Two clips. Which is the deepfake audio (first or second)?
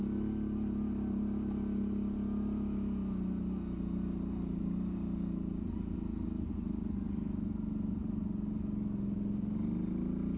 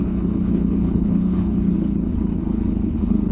second